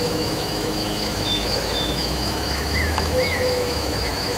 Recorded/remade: remade